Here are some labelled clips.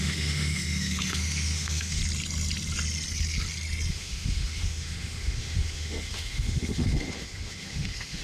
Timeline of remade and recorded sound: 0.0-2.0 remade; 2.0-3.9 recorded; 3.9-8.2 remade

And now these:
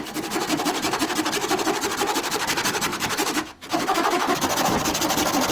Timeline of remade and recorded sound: 0.0-2.9 recorded; 2.9-4.7 remade; 4.7-5.5 recorded

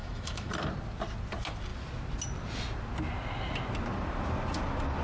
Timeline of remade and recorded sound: 0.0-0.5 remade; 0.5-5.0 recorded

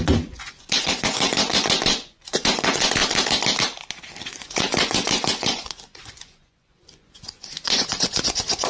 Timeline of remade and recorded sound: 0.0-3.0 remade; 3.0-4.3 recorded; 4.3-8.7 remade

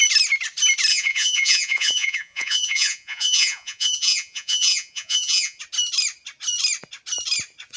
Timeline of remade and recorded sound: 0.0-0.9 recorded; 0.9-5.6 remade; 5.6-7.8 recorded

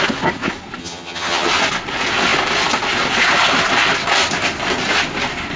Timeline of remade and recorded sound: 0.0-0.8 recorded; 0.8-1.5 remade; 1.5-5.6 recorded

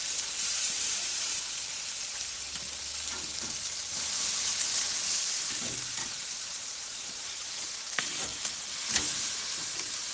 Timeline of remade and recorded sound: 0.0-1.1 recorded; 1.1-1.6 remade; 1.6-6.0 recorded; 6.0-7.7 remade; 7.7-10.1 recorded

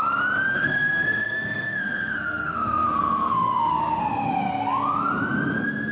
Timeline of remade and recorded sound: 0.0-0.5 recorded; 0.5-4.0 remade; 4.0-5.9 recorded